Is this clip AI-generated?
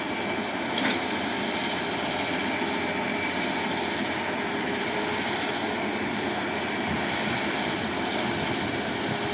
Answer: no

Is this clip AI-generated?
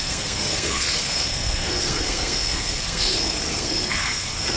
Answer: yes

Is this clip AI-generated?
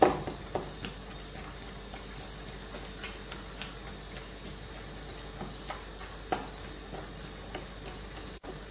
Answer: no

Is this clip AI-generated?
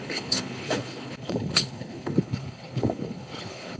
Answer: yes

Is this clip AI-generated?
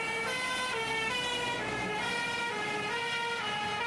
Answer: no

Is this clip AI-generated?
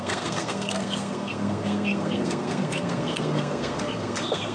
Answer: yes